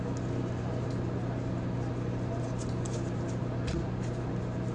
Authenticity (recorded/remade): recorded